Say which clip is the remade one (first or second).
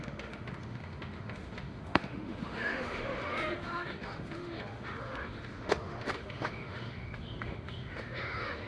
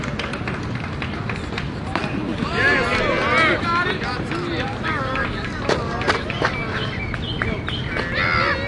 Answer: first